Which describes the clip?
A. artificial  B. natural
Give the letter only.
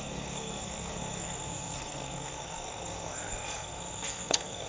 A